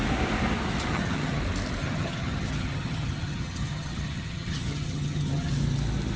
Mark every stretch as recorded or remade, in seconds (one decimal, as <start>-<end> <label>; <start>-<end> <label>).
0.0-0.9 recorded; 0.9-1.4 remade; 1.4-1.8 recorded; 1.8-5.5 remade; 5.5-6.2 recorded